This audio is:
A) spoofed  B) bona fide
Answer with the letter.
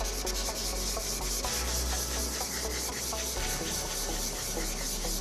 B